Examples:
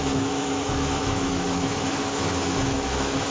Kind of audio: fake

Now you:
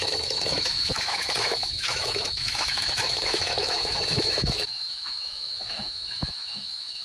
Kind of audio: fake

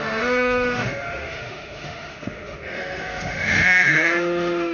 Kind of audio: fake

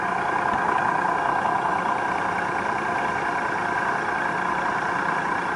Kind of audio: real